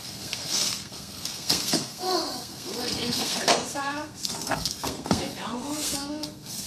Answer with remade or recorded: remade